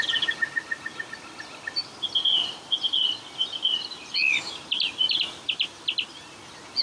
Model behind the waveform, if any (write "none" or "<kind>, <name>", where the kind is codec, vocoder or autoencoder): none